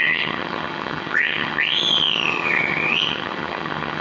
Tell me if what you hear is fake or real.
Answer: fake